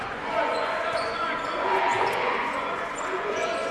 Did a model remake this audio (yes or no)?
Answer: yes